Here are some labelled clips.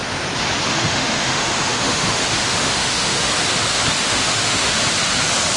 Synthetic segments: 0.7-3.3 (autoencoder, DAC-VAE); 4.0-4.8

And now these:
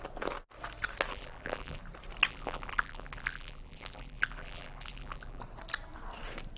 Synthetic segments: 1.1-1.8 (vocoder, BigVGAN v2); 2.3-5.4

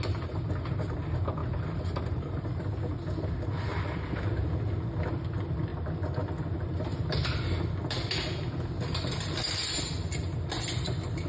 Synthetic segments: 3.7-4.3 (vocoder, BigVGAN v2)